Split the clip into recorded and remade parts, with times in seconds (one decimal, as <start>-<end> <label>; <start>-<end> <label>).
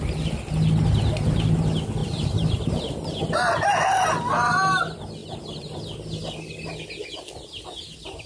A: 0.0-2.0 recorded; 2.0-2.7 remade; 2.7-5.2 recorded; 5.2-5.8 remade; 5.8-8.3 recorded